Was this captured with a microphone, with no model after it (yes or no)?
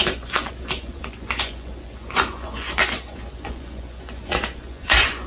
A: no